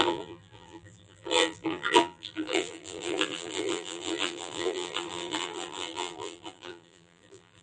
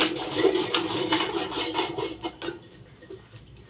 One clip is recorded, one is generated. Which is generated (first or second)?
first